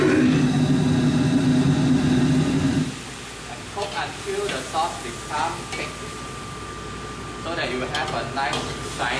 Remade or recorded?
recorded